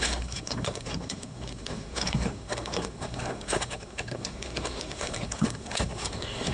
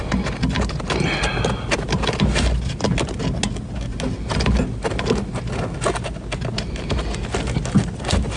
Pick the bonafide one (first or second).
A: second